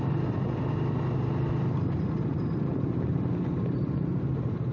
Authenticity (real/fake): real